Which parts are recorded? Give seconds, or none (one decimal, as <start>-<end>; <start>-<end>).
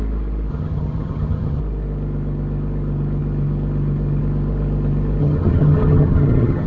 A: 0.0-0.5; 1.6-5.2